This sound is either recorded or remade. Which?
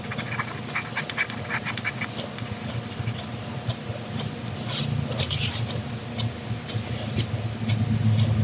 recorded